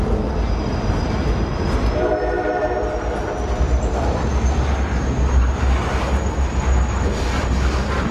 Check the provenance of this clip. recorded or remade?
remade